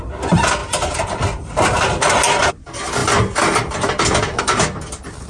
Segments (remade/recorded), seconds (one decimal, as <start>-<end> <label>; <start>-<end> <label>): 0.0-0.6 recorded; 0.6-2.5 remade; 2.5-5.3 recorded